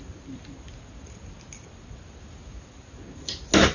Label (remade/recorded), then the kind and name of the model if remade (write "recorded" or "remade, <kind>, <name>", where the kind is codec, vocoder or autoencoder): recorded